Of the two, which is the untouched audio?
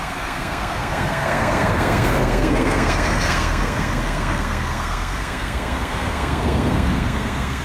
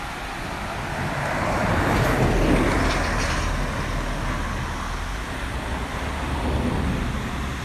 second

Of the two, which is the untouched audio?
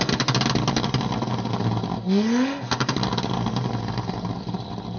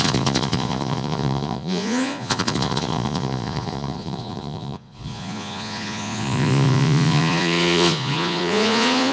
first